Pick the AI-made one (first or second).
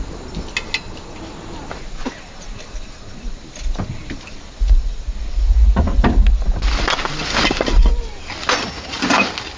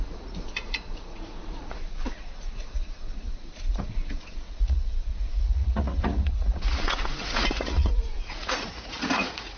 second